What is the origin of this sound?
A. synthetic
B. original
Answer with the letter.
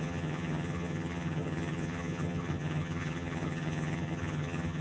A